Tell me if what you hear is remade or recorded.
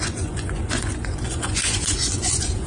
remade